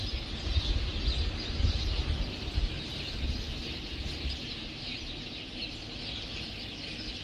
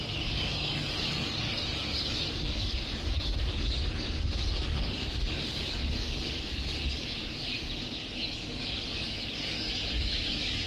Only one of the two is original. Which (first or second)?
first